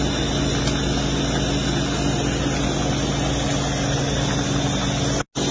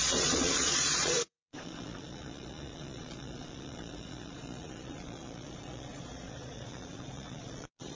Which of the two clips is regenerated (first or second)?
second